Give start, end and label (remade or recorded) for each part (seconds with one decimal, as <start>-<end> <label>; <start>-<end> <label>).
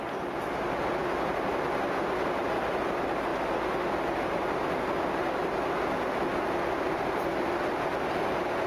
0.0-8.7 recorded